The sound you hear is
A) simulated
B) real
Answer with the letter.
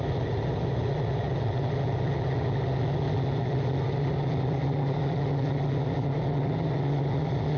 B